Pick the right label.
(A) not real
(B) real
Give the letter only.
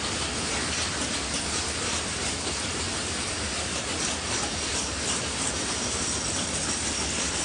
B